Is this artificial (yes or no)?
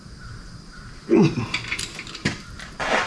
no